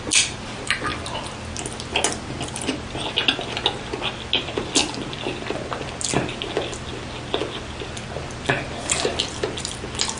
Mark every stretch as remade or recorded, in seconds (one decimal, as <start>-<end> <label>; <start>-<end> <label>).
0.0-10.2 recorded